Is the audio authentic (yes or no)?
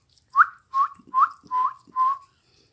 yes